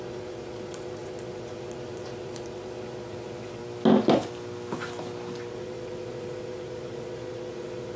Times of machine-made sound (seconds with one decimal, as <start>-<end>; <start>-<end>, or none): 0.0-3.6; 5.5-8.0